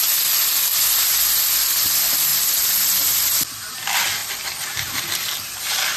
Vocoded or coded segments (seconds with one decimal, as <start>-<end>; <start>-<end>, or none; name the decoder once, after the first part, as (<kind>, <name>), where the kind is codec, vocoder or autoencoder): 0.7-1.4 (vocoder, BigVGAN v2); 2.3-3.7; 4.2-5.0